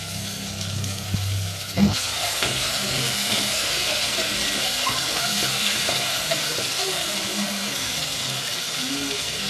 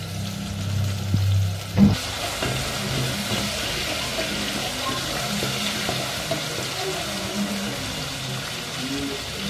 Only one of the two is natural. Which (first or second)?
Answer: second